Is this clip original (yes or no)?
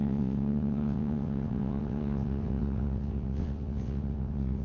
no